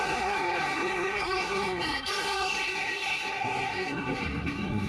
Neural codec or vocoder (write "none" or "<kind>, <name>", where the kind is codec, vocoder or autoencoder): codec, SNAC